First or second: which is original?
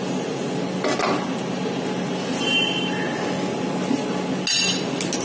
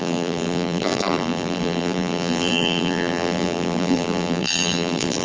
first